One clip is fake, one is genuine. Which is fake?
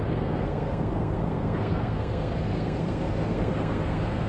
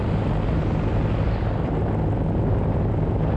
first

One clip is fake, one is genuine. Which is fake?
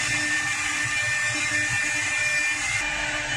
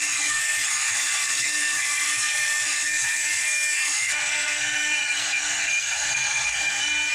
second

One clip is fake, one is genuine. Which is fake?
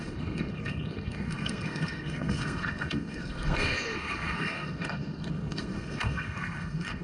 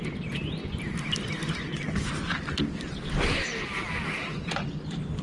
first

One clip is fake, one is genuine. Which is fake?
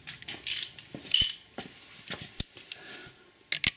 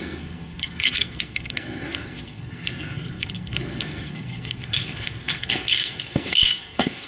second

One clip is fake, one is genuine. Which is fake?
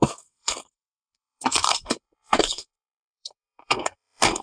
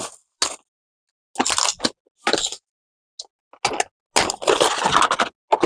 first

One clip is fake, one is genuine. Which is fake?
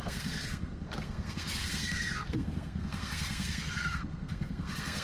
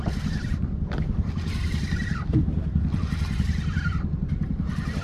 first